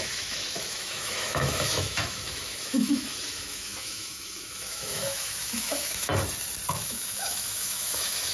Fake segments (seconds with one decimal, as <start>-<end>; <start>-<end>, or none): 0.0-6.1; 6.7-8.3